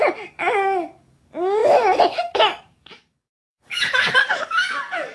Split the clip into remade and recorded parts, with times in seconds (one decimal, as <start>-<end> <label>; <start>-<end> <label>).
0.0-5.1 remade